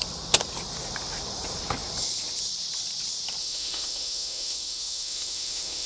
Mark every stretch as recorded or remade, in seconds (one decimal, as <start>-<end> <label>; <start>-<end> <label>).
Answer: 0.0-3.4 recorded; 3.4-5.9 remade